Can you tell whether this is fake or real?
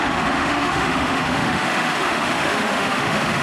fake